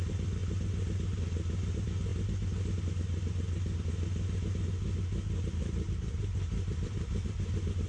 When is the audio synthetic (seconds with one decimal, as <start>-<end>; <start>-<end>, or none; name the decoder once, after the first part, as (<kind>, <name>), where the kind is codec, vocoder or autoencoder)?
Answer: 0.0-0.4 (vocoder, BigVGAN v2); 1.7-2.1; 5.7-7.9

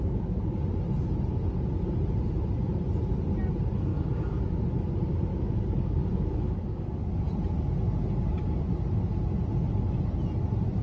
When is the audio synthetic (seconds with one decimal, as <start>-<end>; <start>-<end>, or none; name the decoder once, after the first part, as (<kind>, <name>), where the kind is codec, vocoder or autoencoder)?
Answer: 3.9-4.6 (codec, DAC); 5.3-7.0

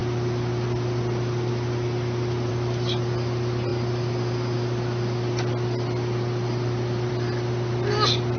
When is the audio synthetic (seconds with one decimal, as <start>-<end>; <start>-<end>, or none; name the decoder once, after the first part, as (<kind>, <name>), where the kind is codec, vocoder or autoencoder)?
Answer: none

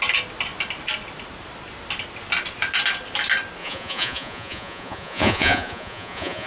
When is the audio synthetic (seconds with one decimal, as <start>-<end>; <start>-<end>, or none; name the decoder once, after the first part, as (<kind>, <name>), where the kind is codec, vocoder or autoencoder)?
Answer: 3.6-6.5 (vocoder, Vocos)